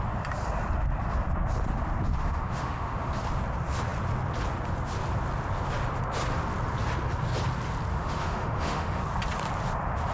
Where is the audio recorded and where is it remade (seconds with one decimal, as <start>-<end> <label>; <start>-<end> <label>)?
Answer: 0.0-2.2 recorded; 2.2-3.1 remade; 3.1-7.9 recorded; 7.9-9.0 remade; 9.0-10.1 recorded